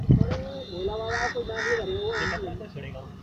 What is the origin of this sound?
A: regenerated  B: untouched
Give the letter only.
B